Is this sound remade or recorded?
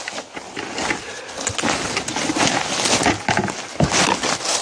recorded